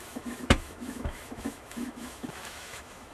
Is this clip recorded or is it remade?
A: remade